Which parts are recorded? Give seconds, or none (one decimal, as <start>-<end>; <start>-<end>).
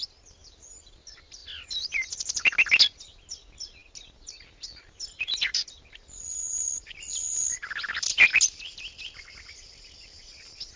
0.0-10.8